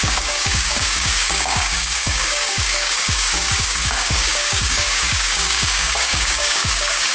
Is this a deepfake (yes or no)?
yes